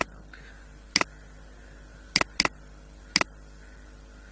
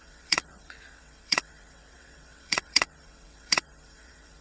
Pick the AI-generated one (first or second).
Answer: second